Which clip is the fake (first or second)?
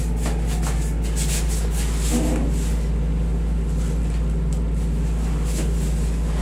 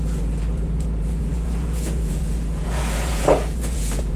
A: second